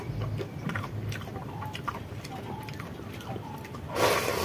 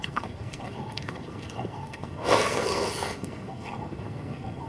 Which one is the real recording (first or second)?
first